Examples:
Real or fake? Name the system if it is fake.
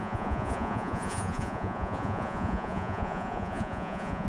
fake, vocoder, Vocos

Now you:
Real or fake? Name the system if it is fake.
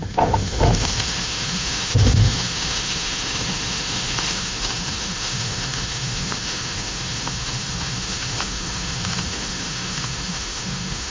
fake, autoencoder, DAC-VAE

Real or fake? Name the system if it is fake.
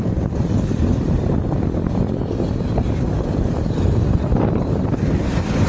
fake, vocoder, BigVGAN v2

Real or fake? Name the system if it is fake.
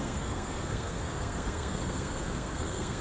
fake, codec, SNAC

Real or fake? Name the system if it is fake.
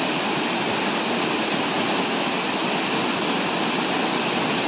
real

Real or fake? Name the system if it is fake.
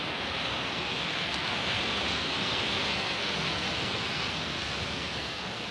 fake, codec, SNAC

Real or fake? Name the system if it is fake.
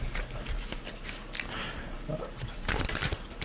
real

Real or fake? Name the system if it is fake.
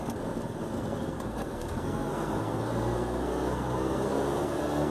fake, codec, SNAC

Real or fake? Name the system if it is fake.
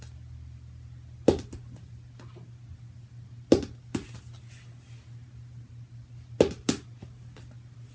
real